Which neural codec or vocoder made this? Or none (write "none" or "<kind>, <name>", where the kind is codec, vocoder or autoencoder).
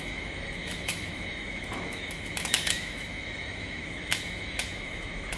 autoencoder, DAC-VAE